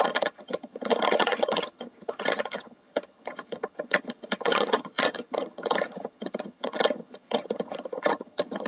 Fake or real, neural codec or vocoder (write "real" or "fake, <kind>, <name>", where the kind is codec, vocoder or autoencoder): fake, vocoder, HiFi-GAN